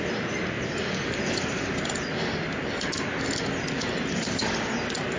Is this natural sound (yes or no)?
yes